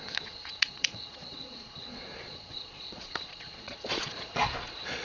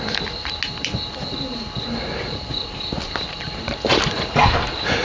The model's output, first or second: first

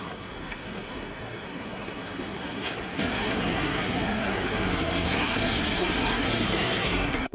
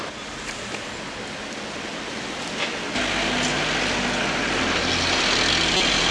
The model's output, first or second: first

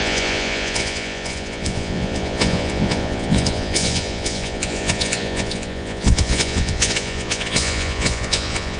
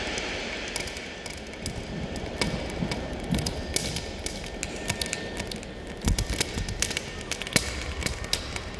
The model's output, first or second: first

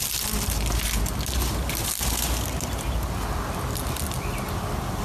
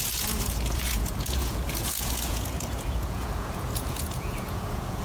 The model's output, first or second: second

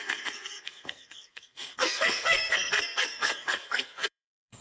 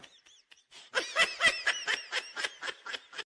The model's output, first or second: first